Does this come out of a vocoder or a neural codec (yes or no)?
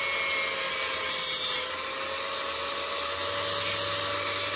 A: no